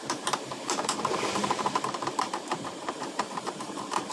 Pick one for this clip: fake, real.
fake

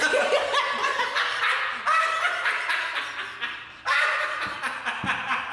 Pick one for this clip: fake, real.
fake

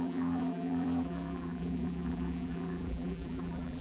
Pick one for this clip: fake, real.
fake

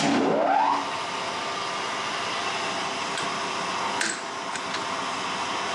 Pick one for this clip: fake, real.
real